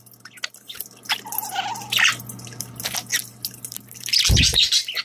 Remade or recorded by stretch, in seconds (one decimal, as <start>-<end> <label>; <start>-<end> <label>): 0.0-5.0 recorded